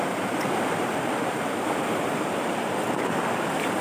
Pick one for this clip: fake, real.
real